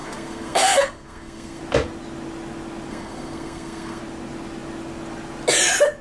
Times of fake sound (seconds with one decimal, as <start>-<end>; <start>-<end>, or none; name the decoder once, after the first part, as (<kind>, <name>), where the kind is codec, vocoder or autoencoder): 0.0-1.6 (codec, SNAC); 2.9-4.0